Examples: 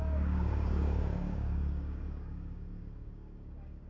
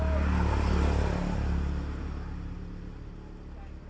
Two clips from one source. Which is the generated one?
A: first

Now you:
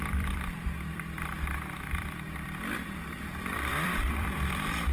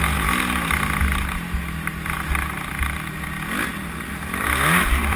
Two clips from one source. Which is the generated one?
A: first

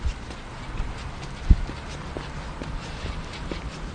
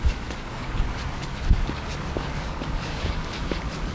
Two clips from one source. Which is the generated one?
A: second